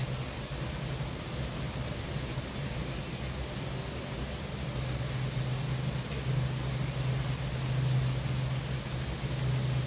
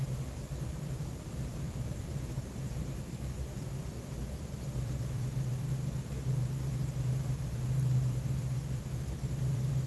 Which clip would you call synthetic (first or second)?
second